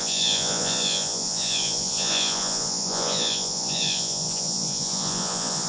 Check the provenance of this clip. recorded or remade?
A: remade